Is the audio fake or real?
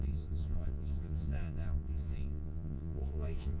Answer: fake